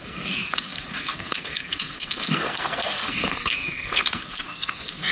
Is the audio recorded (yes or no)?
no